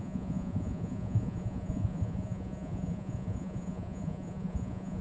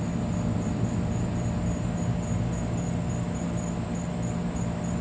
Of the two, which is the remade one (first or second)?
first